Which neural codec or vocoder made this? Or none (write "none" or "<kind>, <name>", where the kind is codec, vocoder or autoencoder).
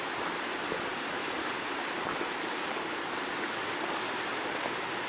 none